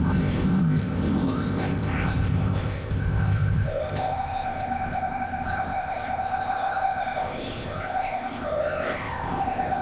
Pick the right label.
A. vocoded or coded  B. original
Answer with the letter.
A